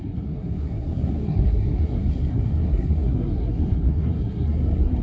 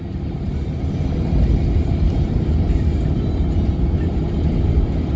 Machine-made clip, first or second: first